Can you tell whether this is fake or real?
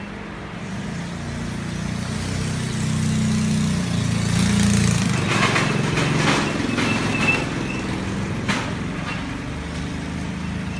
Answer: real